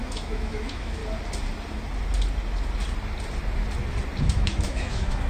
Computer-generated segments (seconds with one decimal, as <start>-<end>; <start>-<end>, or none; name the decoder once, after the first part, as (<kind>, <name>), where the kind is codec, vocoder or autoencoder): 0.0-1.0 (autoencoder, DAC-VAE); 4.2-5.3